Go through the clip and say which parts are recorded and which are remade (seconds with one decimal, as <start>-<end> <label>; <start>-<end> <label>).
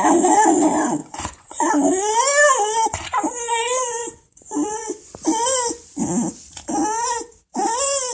0.0-1.0 recorded; 1.0-1.7 remade; 1.7-4.0 recorded; 4.0-5.1 remade; 5.1-8.1 recorded